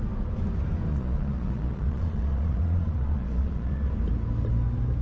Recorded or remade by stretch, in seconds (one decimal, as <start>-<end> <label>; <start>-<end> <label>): 0.0-0.9 recorded; 0.9-3.9 remade; 3.9-5.0 recorded